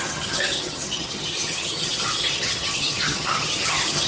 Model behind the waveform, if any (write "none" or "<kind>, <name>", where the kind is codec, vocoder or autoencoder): vocoder, HiFi-GAN